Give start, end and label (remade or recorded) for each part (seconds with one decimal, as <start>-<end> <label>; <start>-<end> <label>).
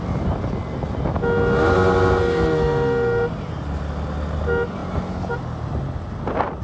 0.0-6.6 recorded